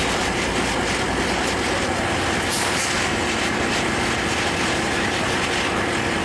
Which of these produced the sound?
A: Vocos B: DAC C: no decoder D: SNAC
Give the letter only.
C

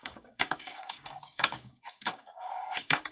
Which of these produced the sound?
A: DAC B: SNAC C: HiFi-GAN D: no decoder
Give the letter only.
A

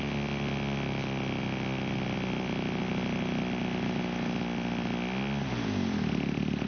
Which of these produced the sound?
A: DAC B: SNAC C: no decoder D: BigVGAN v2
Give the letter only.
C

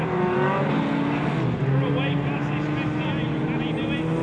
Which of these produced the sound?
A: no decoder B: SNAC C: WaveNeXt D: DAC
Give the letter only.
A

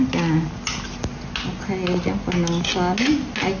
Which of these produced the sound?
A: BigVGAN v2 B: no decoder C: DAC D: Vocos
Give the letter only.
B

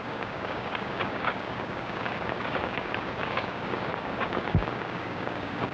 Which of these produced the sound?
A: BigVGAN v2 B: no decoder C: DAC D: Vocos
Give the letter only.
C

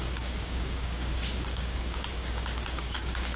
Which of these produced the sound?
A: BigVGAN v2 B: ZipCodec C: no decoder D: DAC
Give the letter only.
D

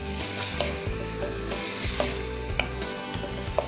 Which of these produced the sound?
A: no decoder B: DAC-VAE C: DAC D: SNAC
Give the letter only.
A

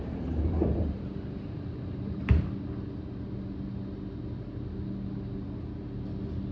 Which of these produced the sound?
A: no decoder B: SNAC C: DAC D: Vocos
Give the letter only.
A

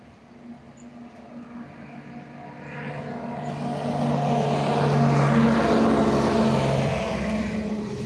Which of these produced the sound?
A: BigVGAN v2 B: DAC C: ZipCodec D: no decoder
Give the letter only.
D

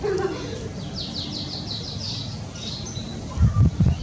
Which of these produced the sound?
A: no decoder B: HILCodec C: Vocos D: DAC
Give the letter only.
A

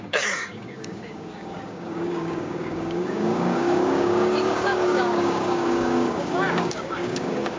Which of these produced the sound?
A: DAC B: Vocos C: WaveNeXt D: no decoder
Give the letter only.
A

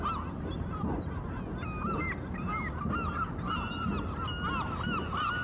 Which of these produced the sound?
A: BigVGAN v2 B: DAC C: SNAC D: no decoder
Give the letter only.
D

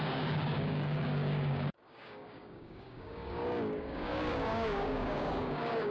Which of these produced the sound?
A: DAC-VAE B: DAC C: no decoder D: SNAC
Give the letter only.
B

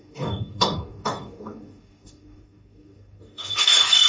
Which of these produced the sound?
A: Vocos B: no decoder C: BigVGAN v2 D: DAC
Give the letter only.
D